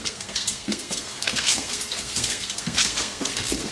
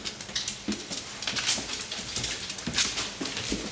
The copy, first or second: first